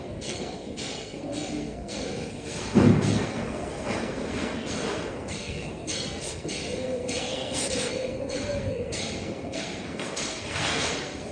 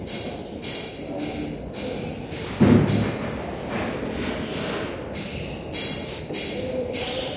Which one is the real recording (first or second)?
second